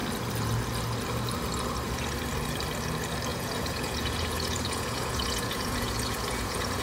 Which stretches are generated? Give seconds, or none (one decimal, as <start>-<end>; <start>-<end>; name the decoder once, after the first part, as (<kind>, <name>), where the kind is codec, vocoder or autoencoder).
3.3-6.8 (vocoder, Vocos)